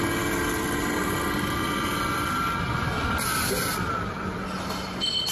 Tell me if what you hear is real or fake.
real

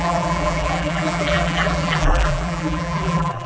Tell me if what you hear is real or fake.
fake